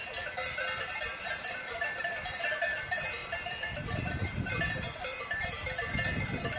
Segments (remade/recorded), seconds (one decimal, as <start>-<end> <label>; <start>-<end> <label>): 0.0-1.4 recorded; 1.4-6.6 remade